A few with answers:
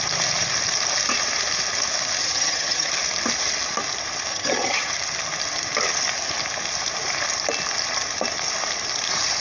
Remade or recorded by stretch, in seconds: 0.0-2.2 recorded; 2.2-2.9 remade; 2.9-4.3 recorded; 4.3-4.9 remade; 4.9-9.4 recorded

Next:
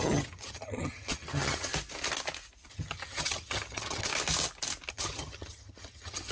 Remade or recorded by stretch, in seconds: 0.0-1.7 remade; 1.7-2.7 recorded; 2.7-4.1 remade; 4.1-4.9 recorded; 4.9-6.3 remade

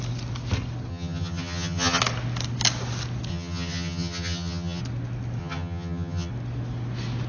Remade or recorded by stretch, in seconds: 0.0-0.9 recorded; 0.9-2.0 remade; 2.0-3.3 recorded; 3.3-4.8 remade; 4.8-5.4 recorded; 5.4-6.3 remade; 6.3-7.3 recorded

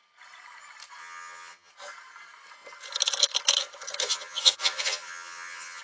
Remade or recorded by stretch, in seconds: 0.0-1.0 recorded; 1.0-1.7 remade; 1.7-4.0 recorded; 4.0-5.8 remade

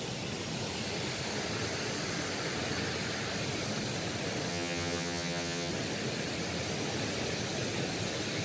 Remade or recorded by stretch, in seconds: 0.0-4.5 recorded; 4.5-5.7 remade; 5.7-8.4 recorded

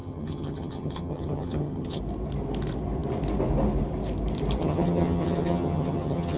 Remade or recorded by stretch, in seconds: 0.0-2.0 remade; 2.0-4.6 recorded; 4.6-6.4 remade